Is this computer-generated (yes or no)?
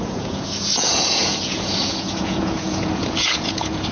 yes